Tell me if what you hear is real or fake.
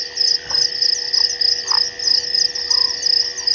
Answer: real